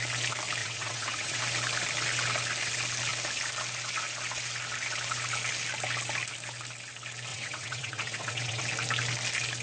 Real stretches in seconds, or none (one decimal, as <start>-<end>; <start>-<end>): 0.0-0.6; 1.4-7.3; 8.6-9.6